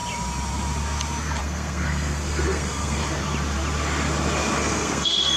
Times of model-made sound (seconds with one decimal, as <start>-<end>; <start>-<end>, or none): 1.4-3.0; 4.6-5.4